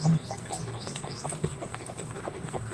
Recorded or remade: remade